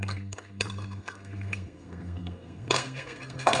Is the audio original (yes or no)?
no